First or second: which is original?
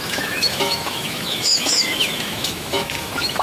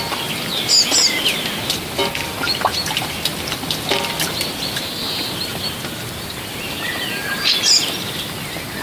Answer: second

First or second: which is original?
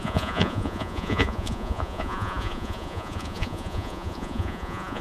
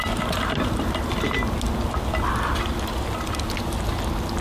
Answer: second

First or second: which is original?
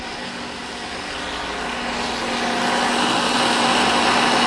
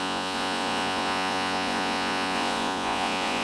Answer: first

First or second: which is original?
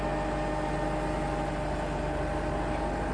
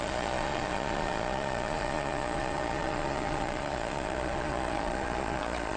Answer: first